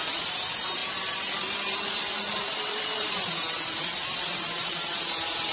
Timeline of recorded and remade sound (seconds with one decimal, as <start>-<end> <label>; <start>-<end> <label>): 0.0-5.5 recorded